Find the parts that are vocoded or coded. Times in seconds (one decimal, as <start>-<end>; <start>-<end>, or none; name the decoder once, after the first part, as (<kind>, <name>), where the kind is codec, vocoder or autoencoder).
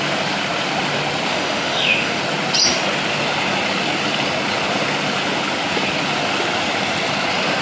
1.3-2.2 (autoencoder, DAC-VAE)